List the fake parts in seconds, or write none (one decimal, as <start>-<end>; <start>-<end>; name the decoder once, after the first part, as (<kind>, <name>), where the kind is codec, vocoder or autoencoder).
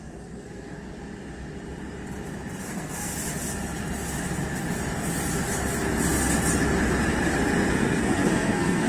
0.0-0.9 (codec, SNAC); 2.6-3.1; 7.7-8.9